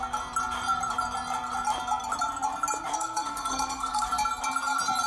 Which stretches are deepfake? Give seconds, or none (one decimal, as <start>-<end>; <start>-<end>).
2.9-4.1